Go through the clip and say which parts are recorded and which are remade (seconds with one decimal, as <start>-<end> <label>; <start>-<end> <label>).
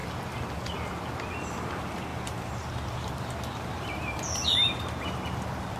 0.0-2.1 recorded; 2.1-5.8 remade